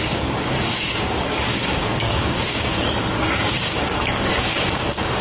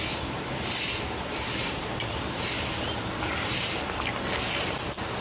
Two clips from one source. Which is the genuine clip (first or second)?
second